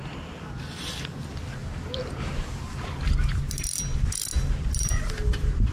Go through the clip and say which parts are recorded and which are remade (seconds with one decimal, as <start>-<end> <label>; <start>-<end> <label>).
0.0-1.6 recorded; 1.6-2.7 remade; 2.7-5.7 recorded